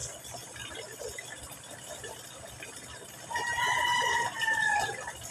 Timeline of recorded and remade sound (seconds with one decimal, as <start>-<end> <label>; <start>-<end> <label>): 0.0-5.3 recorded